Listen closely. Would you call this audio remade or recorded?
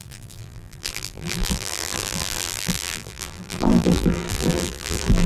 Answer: remade